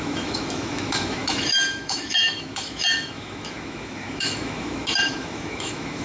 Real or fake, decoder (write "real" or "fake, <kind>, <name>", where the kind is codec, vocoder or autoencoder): fake, autoencoder, DAC-VAE